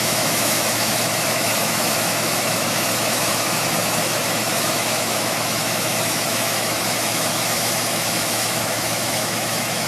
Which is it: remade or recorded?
remade